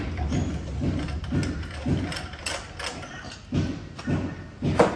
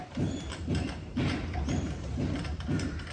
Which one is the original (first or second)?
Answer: first